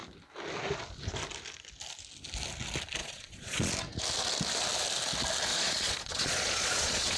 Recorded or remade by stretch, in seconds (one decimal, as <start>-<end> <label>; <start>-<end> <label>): 0.0-3.0 recorded; 3.0-3.7 remade; 3.7-5.5 recorded; 5.5-7.2 remade